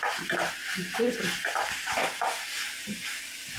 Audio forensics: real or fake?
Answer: fake